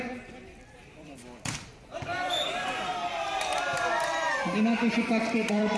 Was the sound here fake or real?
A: fake